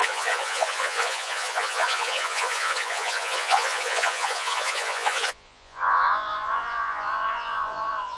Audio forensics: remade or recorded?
remade